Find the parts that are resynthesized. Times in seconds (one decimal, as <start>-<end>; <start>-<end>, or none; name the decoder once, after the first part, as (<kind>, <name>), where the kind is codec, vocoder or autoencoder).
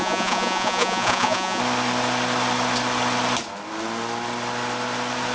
0.0-1.6 (vocoder, Vocos)